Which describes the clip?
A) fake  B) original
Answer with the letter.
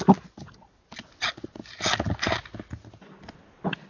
B